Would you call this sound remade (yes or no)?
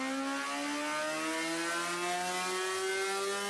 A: no